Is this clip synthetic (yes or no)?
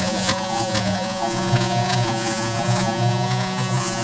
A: yes